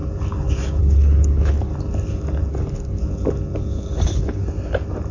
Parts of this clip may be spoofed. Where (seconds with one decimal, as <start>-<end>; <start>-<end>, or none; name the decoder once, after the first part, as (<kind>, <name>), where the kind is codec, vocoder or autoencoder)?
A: 0.8-1.7 (codec, HILCodec); 2.5-3.0; 4.0-4.4